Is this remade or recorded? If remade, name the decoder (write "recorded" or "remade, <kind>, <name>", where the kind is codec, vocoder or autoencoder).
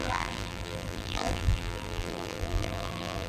remade, vocoder, BigVGAN v2